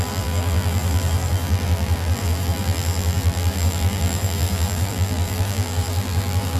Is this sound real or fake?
fake